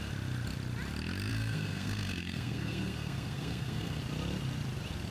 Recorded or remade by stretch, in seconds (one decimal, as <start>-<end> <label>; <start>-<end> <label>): 0.0-1.3 recorded; 1.3-4.0 remade; 4.0-5.1 recorded